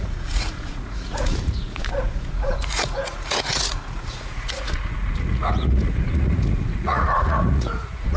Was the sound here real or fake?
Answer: fake